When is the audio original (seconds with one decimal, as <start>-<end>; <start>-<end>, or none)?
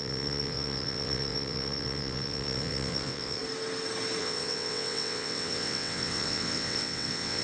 3.4-4.2